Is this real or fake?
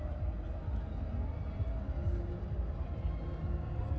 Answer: real